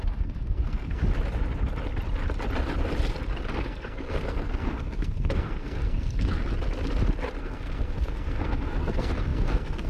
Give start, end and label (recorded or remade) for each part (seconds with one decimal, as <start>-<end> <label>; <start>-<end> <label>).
0.0-1.0 remade; 1.0-3.6 recorded; 3.6-6.4 remade; 6.4-7.4 recorded; 7.4-9.9 remade